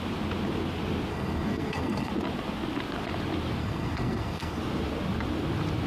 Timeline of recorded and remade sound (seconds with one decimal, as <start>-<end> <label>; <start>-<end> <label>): 0.0-1.1 recorded; 1.1-2.1 remade; 2.1-3.6 recorded; 3.6-4.6 remade; 4.6-5.9 recorded